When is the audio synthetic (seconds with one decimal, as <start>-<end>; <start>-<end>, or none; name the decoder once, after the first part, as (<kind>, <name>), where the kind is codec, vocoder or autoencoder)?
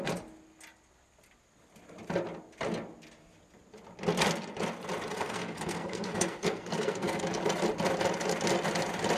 5.1-7.2 (codec, SNAC)